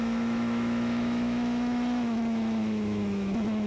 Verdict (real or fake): fake